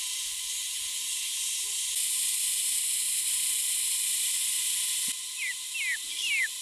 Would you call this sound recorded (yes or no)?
yes